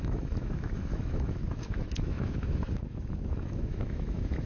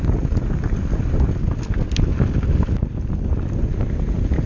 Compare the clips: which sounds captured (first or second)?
second